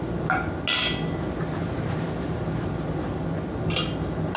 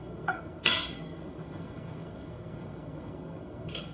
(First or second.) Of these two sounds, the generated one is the second